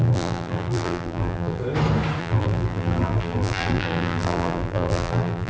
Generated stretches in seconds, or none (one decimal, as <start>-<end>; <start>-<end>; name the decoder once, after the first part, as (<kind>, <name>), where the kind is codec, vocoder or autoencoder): 0.0-1.6 (vocoder, BigVGAN v2); 2.2-5.5

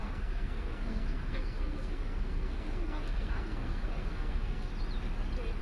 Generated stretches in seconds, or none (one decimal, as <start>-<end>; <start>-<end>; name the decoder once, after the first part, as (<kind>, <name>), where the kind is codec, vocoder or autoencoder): 0.0-4.7 (codec, SNAC)

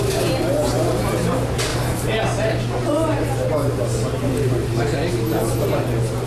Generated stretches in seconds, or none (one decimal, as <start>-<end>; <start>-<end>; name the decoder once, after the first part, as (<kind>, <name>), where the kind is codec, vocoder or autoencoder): none

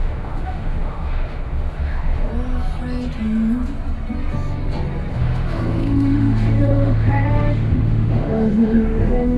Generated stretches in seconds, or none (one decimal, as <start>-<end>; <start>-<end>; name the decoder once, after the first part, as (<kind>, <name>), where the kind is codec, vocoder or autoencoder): 0.0-2.3 (autoencoder, DAC-VAE); 5.1-9.4

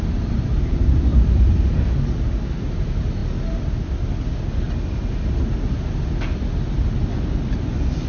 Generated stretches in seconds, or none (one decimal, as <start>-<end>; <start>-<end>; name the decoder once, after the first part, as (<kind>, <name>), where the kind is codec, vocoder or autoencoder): none